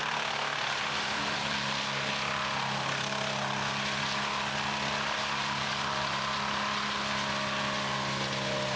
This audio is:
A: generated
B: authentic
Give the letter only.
B